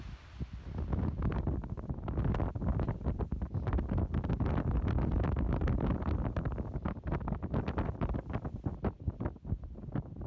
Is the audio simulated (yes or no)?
no